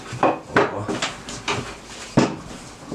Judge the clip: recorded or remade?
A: recorded